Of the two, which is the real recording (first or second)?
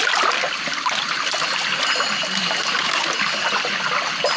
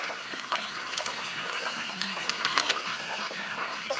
first